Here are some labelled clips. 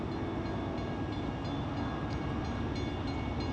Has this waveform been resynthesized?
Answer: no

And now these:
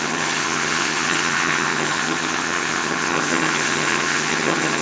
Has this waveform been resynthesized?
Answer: yes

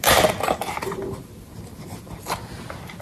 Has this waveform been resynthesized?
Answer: no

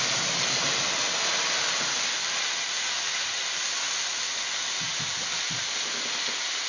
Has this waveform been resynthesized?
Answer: no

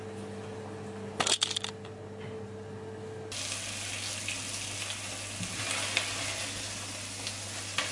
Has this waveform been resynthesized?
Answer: no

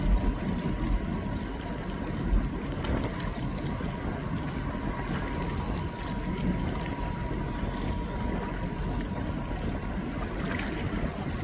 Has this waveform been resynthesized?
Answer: no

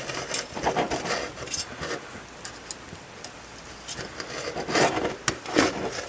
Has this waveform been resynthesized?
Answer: no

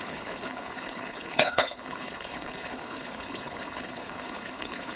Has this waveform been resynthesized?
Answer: yes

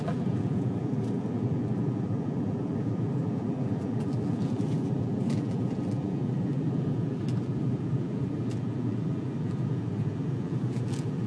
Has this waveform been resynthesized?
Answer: yes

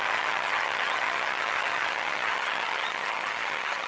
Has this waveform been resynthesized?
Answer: yes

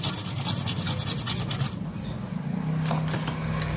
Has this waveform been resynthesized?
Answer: no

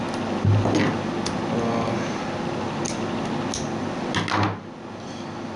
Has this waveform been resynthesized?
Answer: no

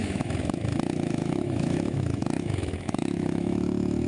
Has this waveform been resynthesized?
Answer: yes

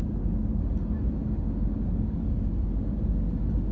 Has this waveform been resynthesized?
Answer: no